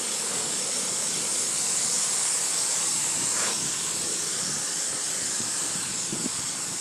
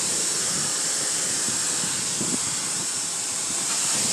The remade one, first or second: first